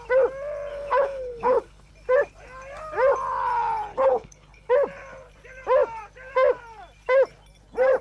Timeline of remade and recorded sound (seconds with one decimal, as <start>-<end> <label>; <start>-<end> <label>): 0.0-0.7 recorded; 0.7-1.9 remade; 1.9-3.9 recorded; 3.9-4.7 remade; 4.7-8.0 recorded